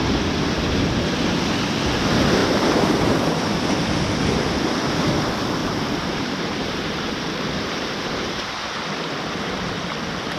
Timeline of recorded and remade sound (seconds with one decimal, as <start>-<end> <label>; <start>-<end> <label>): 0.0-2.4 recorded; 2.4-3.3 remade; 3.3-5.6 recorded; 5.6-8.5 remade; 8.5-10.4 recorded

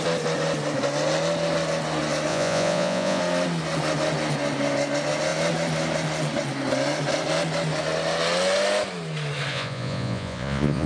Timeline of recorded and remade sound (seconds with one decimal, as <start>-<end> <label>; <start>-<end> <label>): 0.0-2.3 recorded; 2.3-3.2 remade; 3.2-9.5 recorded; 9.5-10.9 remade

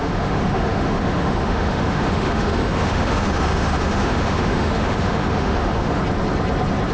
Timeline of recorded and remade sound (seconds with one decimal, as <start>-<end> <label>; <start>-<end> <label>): 0.0-6.0 remade; 6.0-6.9 recorded